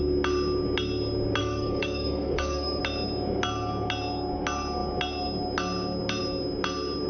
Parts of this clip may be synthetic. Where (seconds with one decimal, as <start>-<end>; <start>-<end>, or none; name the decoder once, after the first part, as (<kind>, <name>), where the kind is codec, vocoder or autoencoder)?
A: 1.4-2.8 (codec, DAC)